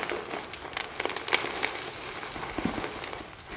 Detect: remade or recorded recorded